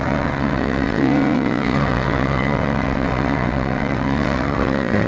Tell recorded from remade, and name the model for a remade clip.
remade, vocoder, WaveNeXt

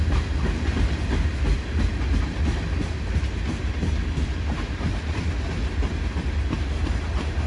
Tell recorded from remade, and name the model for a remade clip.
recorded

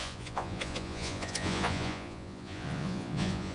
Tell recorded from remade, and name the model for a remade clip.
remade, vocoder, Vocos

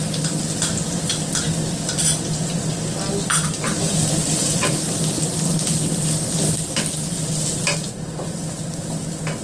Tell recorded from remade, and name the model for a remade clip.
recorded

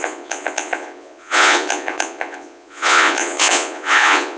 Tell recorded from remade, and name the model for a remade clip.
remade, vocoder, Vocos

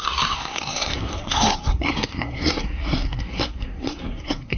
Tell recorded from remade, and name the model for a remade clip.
remade, codec, SNAC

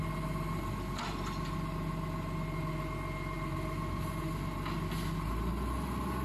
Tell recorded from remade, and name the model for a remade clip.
recorded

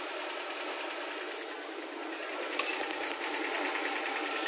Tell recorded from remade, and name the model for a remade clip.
recorded